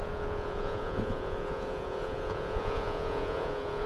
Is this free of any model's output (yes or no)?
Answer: no